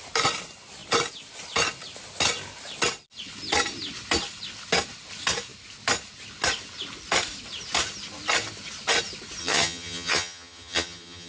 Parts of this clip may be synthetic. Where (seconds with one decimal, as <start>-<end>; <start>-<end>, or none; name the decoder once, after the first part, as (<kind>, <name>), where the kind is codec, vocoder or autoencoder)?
9.4-11.3 (vocoder, HiFi-GAN)